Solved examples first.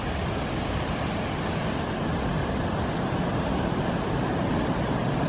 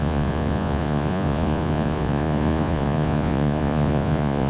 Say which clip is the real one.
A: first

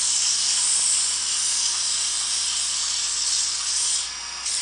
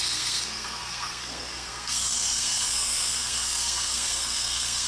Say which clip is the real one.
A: first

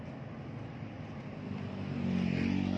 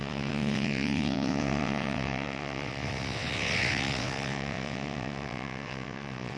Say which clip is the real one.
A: first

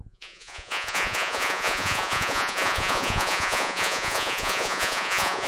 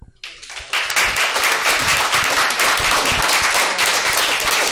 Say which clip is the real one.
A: second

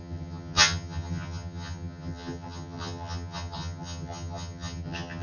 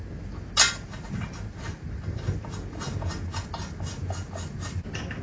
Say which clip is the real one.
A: second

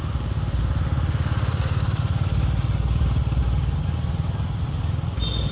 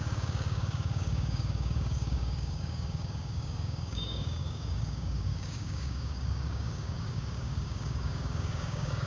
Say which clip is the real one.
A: first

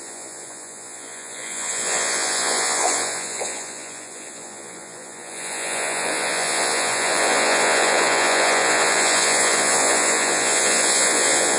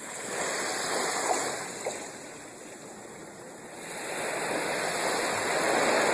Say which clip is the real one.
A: second